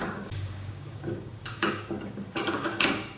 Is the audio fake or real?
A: fake